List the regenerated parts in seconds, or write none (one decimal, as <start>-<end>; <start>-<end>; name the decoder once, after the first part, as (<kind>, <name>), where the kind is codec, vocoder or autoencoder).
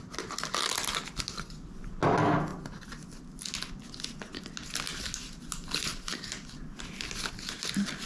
none